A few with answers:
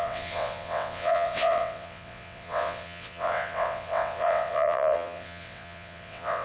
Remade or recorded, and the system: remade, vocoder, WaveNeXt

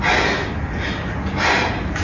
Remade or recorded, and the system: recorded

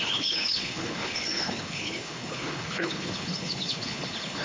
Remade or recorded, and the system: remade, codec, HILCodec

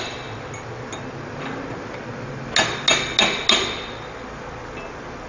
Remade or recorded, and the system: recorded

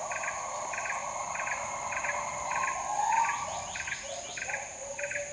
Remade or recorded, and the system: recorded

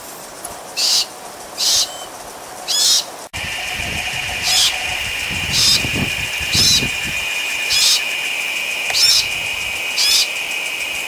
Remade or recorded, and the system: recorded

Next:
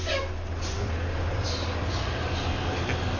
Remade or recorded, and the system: recorded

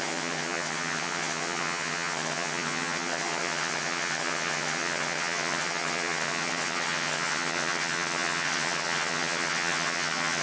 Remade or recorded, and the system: remade, vocoder, HiFi-GAN